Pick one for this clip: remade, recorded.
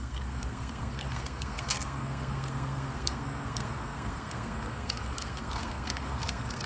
remade